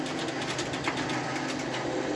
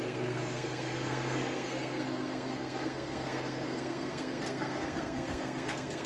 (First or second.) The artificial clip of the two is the second